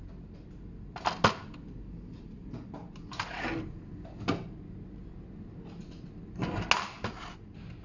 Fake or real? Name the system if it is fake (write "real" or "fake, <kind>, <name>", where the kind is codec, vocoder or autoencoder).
real